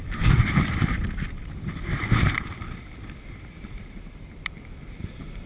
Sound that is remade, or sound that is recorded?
remade